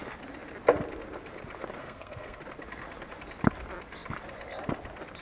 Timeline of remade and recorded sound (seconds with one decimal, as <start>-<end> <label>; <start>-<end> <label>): 0.0-1.8 recorded; 1.8-2.4 remade; 2.4-5.2 recorded